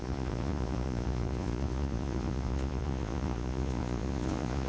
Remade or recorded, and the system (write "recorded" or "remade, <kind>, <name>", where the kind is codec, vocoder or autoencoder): remade, vocoder, Vocos